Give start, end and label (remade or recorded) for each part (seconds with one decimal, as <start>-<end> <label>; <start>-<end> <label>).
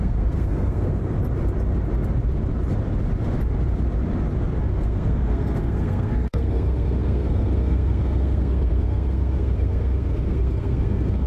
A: 0.0-1.0 remade; 1.0-4.7 recorded; 4.7-11.3 remade